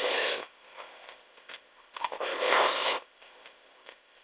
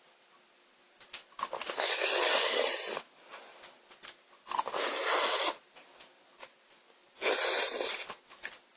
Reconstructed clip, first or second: first